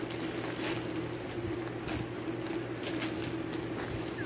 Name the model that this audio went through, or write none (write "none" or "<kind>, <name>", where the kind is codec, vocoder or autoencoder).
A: none